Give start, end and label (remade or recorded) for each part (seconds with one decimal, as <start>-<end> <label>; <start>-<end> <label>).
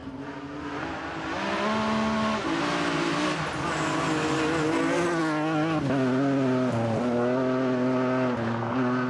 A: 0.0-9.1 recorded